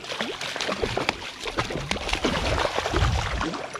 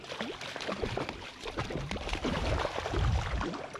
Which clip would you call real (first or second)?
first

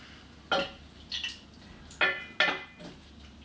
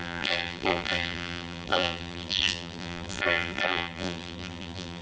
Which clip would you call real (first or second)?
first